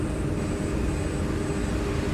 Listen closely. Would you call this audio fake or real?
real